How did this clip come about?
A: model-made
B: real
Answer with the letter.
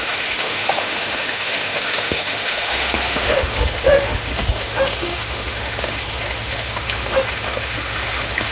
A